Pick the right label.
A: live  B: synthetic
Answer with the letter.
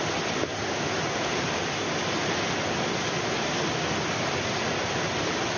A